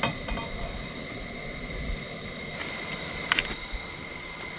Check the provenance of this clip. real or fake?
real